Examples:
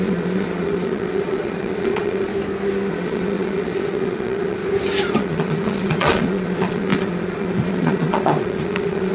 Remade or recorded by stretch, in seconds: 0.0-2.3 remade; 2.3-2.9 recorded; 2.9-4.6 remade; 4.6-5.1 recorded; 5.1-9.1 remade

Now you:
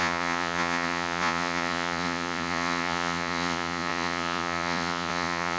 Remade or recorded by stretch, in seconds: 0.0-5.6 remade

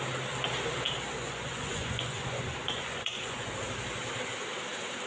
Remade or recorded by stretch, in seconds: 0.0-1.2 recorded; 1.2-3.5 remade; 3.5-5.1 recorded

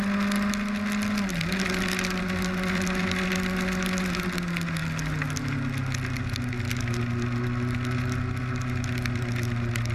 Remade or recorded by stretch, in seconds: 0.0-9.9 recorded

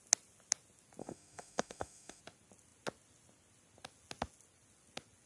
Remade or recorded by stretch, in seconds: 0.0-1.0 recorded; 1.0-2.2 remade; 2.2-5.3 recorded

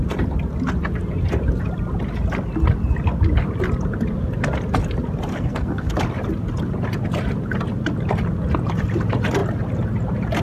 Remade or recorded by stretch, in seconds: 0.0-5.3 recorded; 5.3-5.9 remade; 5.9-10.4 recorded

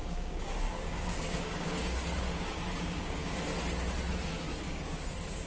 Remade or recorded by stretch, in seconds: 0.0-3.3 remade; 3.3-4.5 recorded; 4.5-5.5 remade

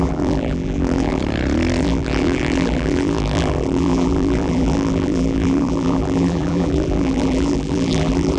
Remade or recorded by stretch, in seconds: 0.0-1.2 remade; 1.2-1.8 recorded; 1.8-8.4 remade